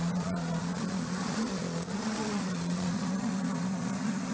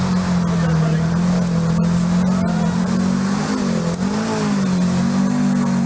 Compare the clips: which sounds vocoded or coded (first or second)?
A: first